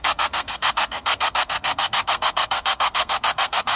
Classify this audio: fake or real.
fake